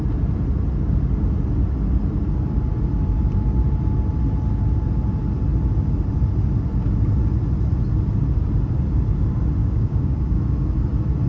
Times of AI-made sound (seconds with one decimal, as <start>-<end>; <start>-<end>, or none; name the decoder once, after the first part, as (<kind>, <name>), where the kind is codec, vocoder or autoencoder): 9.6-10.4 (codec, DAC)